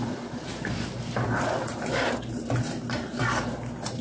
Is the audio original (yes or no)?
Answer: yes